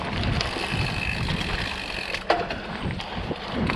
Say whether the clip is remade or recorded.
remade